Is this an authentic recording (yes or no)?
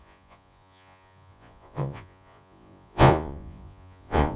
no